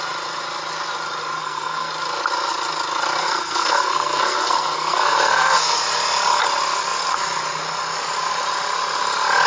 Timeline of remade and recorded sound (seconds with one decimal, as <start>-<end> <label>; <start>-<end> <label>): 0.0-1.4 recorded; 1.4-1.9 remade; 1.9-3.2 recorded; 3.2-5.8 remade; 5.8-9.5 recorded